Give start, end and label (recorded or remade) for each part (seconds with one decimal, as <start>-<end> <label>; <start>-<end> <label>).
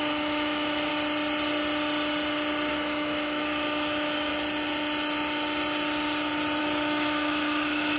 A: 0.0-0.9 remade; 0.9-2.7 recorded; 2.7-4.3 remade; 4.3-6.6 recorded; 6.6-8.0 remade